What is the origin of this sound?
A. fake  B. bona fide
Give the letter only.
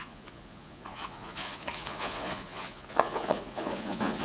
A